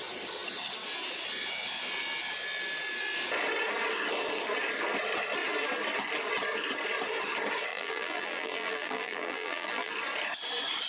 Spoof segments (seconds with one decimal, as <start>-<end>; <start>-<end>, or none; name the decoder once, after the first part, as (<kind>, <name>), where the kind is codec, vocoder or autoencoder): 7.7-9.9 (vocoder, BigVGAN v2)